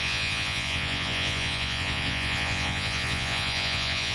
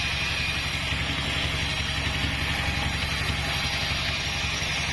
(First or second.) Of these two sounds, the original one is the second